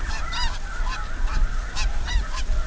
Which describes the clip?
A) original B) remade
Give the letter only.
A